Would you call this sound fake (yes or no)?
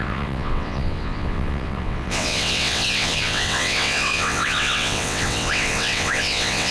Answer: yes